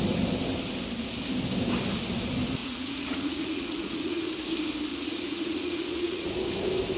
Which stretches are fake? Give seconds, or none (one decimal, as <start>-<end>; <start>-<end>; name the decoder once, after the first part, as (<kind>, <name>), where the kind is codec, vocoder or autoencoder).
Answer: 2.6-4.3 (vocoder, Vocos); 4.9-6.3